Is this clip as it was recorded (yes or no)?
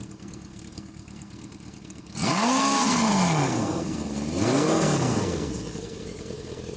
no